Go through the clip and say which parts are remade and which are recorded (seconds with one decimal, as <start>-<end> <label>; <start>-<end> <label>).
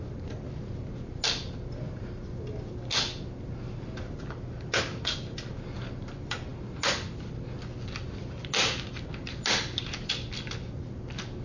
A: 0.0-11.4 recorded